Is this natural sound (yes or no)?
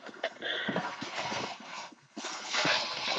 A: no